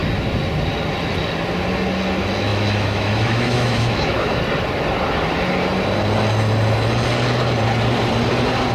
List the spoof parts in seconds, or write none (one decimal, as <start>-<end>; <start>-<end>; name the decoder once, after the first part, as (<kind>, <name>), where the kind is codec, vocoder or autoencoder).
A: 2.5-4.4 (autoencoder, DAC-VAE)